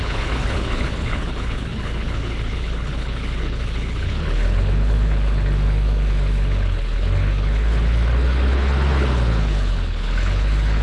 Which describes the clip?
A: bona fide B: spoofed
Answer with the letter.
B